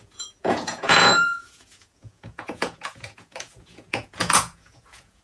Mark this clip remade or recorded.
remade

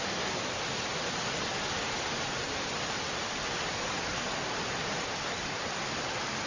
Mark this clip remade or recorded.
recorded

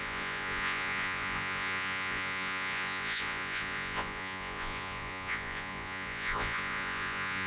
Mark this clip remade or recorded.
remade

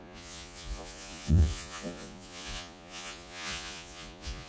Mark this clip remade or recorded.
remade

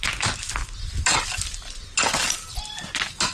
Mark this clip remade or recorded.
recorded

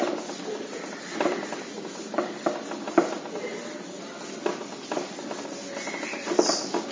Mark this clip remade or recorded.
recorded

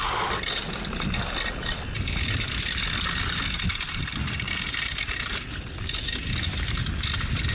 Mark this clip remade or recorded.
recorded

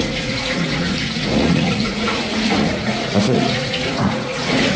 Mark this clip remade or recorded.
remade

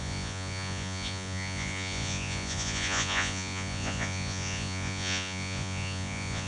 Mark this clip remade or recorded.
remade